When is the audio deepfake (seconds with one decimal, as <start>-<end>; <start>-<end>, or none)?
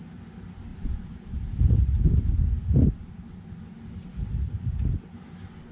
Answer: 0.7-3.5